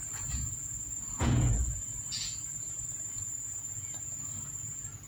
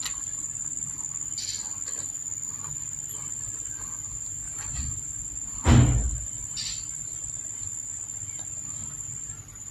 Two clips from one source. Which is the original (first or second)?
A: second